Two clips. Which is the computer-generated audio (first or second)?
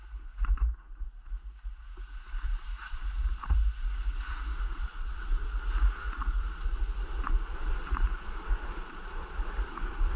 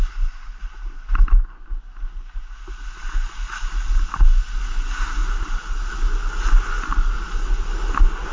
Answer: first